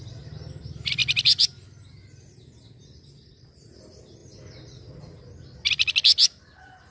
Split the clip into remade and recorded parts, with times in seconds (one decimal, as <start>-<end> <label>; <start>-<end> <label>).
0.0-6.9 recorded